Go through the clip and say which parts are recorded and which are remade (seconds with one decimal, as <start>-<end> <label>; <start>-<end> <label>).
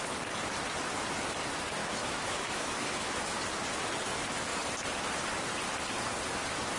0.0-1.8 recorded; 1.8-3.4 remade; 3.4-6.8 recorded